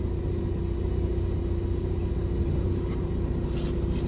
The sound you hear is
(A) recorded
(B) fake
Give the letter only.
A